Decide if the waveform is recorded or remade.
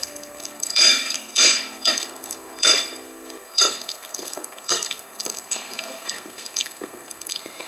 remade